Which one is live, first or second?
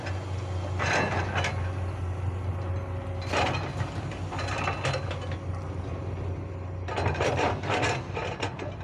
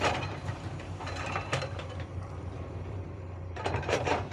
first